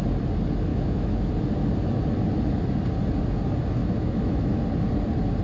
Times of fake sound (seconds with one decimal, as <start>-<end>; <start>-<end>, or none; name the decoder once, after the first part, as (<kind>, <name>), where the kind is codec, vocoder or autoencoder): 0.7-1.3 (autoencoder, DAC-VAE); 3.8-4.6